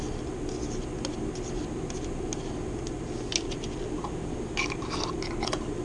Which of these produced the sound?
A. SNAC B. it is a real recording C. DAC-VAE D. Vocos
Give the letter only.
B